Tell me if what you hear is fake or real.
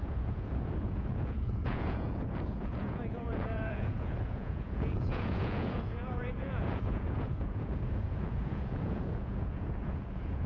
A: fake